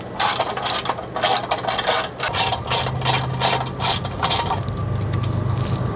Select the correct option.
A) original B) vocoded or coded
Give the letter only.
A